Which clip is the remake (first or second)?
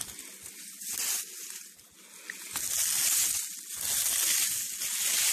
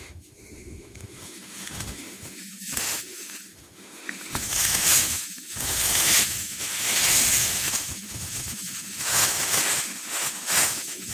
second